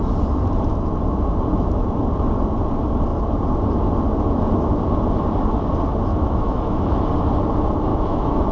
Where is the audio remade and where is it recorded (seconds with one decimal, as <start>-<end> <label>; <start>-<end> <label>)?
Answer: 0.0-6.1 recorded; 6.1-7.0 remade; 7.0-7.9 recorded; 7.9-8.5 remade